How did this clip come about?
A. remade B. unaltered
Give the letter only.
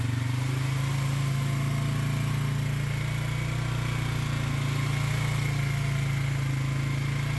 B